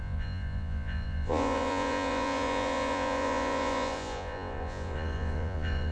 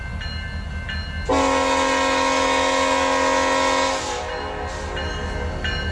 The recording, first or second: second